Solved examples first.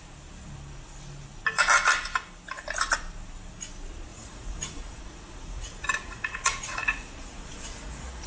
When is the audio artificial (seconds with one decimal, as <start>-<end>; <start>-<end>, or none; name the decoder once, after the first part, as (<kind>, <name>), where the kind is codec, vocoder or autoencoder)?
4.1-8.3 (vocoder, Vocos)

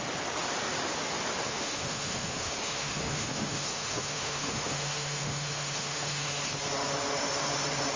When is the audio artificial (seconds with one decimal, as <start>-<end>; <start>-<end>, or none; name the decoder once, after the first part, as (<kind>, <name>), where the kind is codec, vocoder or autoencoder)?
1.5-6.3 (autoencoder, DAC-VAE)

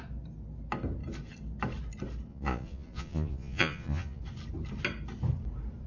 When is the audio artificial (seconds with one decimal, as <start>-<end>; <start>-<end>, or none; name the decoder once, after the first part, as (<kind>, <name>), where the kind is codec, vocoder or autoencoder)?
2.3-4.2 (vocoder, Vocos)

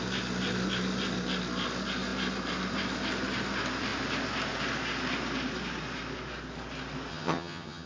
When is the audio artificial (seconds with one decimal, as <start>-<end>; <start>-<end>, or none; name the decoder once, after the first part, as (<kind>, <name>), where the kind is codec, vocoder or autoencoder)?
7.1-7.9 (vocoder, HiFi-GAN)